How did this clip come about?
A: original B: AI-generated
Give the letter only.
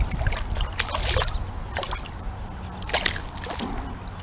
A